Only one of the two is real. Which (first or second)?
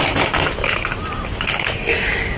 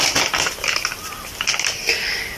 first